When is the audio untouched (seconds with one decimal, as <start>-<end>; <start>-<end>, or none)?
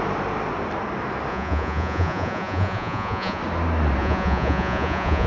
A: 0.0-1.3; 3.4-4.0